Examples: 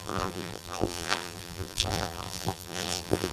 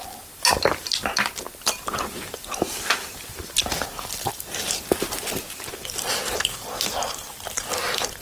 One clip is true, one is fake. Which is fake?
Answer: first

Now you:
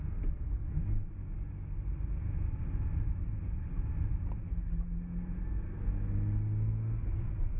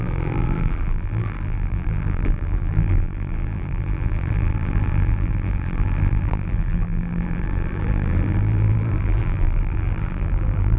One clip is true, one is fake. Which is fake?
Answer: second